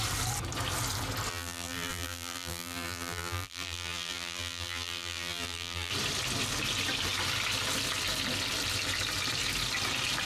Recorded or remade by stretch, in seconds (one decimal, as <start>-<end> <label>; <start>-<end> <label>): 0.0-1.3 recorded; 1.3-5.9 remade; 5.9-10.3 recorded